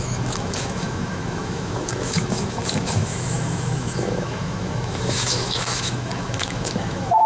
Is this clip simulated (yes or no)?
yes